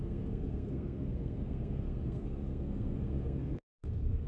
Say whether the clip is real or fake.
fake